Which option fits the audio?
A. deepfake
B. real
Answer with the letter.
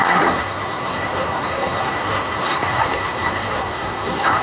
A